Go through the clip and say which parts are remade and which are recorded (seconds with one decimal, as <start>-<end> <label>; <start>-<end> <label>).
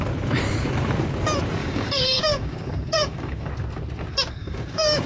0.0-1.6 recorded; 1.6-3.5 remade; 3.5-4.4 recorded; 4.4-5.1 remade